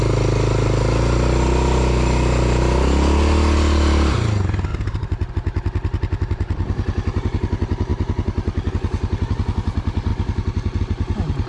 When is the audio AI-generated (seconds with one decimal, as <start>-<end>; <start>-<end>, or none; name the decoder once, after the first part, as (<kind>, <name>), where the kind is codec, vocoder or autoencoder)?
none